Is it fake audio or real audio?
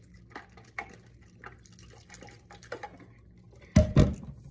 real